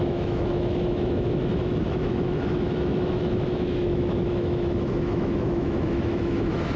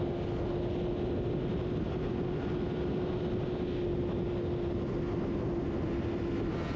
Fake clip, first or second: first